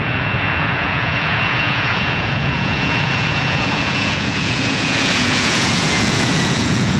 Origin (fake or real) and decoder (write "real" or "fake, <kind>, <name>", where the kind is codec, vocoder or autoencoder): fake, vocoder, Vocos